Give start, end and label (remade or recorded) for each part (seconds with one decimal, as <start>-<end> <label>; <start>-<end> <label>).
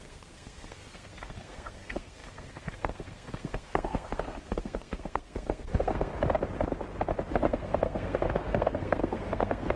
0.0-6.1 remade; 6.1-7.3 recorded; 7.3-9.8 remade